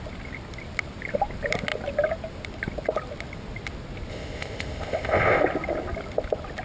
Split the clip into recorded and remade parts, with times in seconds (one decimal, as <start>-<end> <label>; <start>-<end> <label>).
0.0-4.1 recorded; 4.1-5.4 remade; 5.4-6.6 recorded